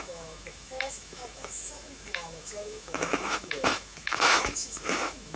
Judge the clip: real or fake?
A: fake